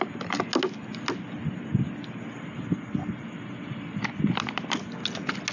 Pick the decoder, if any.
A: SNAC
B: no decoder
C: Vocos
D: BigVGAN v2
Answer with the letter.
B